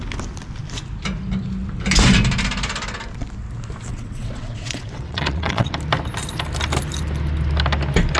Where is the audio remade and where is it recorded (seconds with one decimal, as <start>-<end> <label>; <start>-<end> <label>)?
0.0-3.9 recorded; 3.9-5.7 remade; 5.7-8.2 recorded